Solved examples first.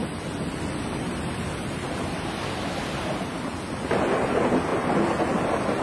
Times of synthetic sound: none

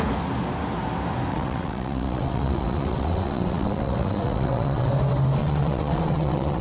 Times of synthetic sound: 1.3-4.9 (vocoder, WaveNeXt); 5.4-6.6

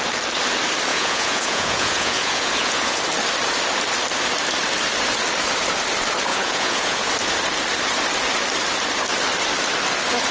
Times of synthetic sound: 0.9-3.0 (vocoder, Vocos); 6.3-7.1

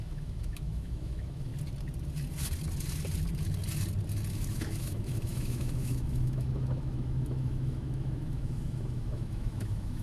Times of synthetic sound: 0.0-1.5 (autoencoder, DAC-VAE); 4.3-10.0

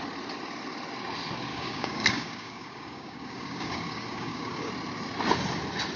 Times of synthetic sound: 1.5-4.7 (codec, DAC)